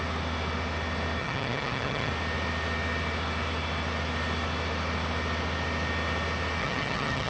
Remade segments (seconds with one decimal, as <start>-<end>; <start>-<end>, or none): 1.2-2.1; 6.6-7.3